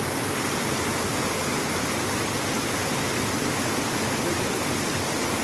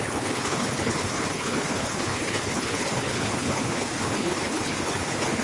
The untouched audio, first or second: first